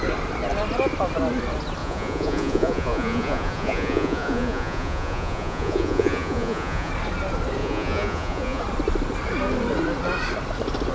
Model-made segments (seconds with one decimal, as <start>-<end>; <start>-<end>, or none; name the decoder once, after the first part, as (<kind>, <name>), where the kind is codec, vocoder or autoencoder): 1.8-6.9 (vocoder, Vocos); 7.6-8.6